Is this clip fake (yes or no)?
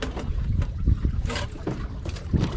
yes